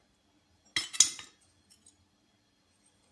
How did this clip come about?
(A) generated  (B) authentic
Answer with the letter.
B